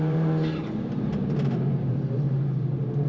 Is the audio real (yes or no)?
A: no